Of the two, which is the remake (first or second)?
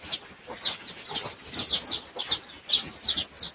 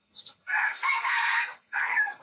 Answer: second